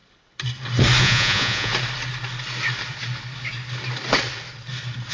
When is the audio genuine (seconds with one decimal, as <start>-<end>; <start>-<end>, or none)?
0.0-1.0; 1.7-5.1